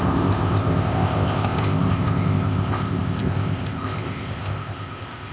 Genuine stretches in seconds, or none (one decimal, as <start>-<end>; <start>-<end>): none